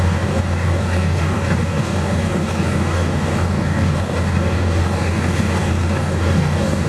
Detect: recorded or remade remade